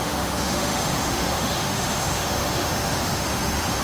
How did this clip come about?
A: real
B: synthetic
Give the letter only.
B